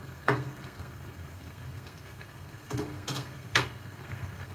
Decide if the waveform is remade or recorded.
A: remade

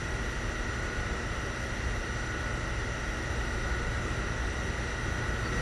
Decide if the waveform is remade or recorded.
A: recorded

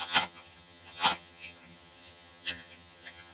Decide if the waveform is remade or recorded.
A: remade